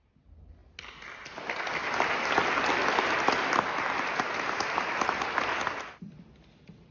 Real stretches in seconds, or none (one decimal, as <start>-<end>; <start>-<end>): 0.0-6.9